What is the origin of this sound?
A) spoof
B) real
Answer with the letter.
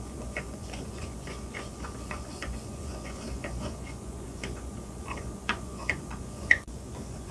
A